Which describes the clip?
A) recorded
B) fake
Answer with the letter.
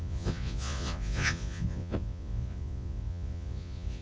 B